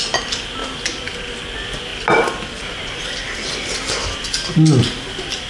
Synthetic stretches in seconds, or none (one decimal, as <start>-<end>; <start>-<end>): none